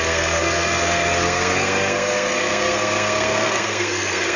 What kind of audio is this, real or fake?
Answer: fake